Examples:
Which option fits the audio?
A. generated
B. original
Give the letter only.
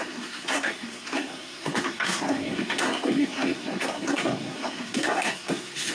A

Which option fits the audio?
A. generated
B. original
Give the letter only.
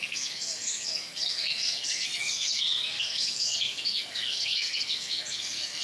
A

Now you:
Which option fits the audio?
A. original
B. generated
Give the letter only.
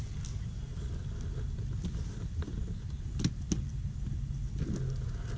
A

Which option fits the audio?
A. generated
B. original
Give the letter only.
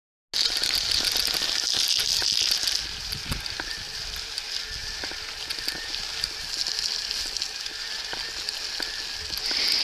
B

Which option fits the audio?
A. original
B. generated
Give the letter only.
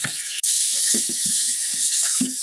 B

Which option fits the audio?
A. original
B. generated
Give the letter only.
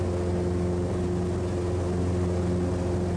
A